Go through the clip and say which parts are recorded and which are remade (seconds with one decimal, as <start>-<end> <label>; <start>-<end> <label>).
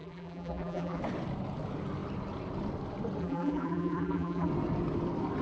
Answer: 0.0-1.0 remade; 1.0-3.2 recorded; 3.2-4.5 remade; 4.5-5.4 recorded